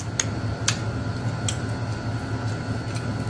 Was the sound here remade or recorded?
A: recorded